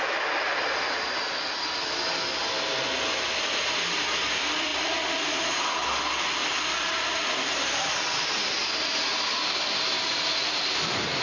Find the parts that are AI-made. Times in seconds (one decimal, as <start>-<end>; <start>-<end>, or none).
none